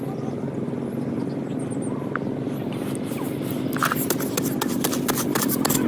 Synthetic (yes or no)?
no